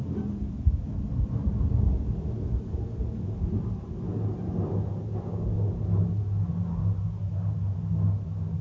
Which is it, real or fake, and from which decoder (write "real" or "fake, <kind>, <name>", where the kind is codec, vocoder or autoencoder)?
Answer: real